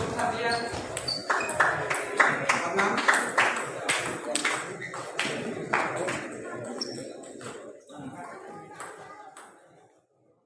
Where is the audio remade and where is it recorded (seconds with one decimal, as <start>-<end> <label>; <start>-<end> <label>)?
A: 0.0-4.4 recorded; 4.4-7.8 remade; 7.8-10.5 recorded